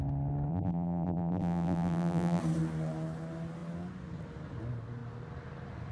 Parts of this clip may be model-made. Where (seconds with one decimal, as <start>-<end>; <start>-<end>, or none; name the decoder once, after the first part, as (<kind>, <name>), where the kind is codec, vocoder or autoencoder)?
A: 0.5-2.4 (vocoder, BigVGAN v2)